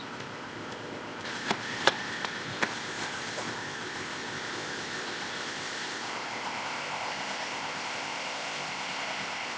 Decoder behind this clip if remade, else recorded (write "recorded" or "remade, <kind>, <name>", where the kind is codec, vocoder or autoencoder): remade, codec, ZipCodec